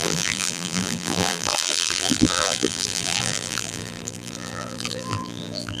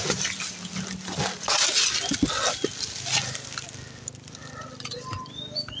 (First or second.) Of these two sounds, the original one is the second